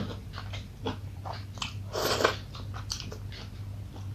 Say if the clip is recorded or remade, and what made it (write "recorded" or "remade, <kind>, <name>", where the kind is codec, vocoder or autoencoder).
recorded